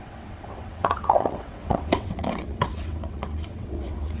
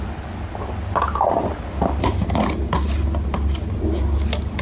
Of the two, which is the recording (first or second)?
second